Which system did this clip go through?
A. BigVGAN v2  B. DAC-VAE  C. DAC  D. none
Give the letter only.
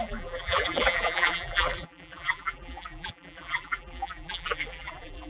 A